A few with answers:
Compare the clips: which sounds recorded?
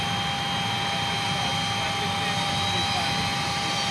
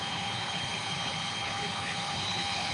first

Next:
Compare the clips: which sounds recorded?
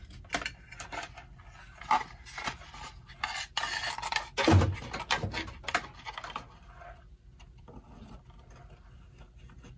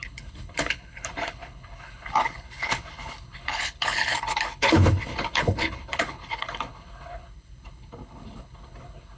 first